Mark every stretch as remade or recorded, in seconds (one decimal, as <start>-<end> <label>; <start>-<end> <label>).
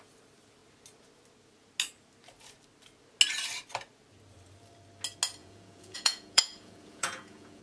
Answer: 0.0-5.4 recorded; 5.4-7.6 remade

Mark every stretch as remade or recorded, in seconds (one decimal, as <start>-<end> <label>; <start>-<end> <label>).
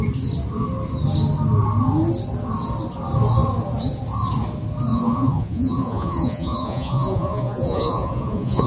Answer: 0.0-4.9 recorded; 4.9-8.7 remade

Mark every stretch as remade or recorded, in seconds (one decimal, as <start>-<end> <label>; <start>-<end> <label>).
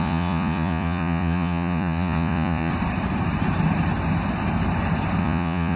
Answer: 0.0-2.7 remade; 2.7-5.2 recorded; 5.2-5.8 remade